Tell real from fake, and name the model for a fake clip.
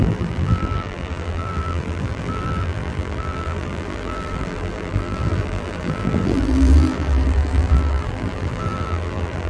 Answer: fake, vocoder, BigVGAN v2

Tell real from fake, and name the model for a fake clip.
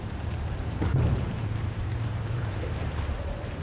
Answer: fake, vocoder, BigVGAN v2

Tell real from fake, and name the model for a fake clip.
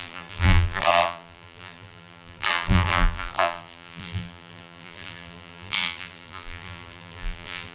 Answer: fake, vocoder, BigVGAN v2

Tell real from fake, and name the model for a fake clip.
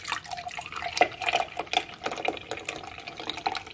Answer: real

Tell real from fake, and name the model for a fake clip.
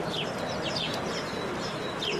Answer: fake, vocoder, BigVGAN v2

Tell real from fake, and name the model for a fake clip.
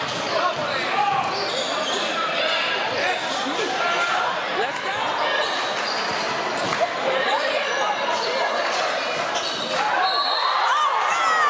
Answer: real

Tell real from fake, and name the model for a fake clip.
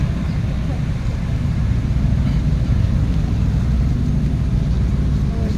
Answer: real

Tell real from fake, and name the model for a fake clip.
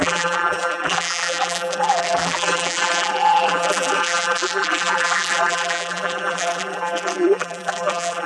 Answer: fake, vocoder, BigVGAN v2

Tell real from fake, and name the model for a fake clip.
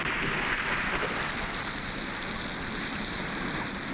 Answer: real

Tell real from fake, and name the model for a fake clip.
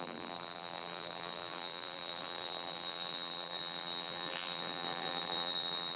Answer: fake, vocoder, BigVGAN v2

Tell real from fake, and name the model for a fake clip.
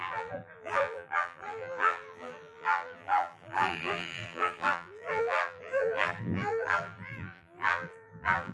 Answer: fake, vocoder, BigVGAN v2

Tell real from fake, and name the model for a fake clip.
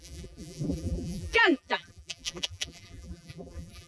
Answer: fake, vocoder, BigVGAN v2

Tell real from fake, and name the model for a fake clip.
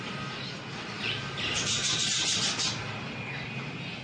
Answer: real